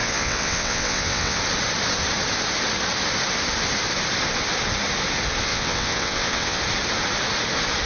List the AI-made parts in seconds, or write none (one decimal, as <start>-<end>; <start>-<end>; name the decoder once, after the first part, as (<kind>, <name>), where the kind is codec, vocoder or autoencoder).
0.0-1.4 (vocoder, WaveNeXt); 5.5-6.6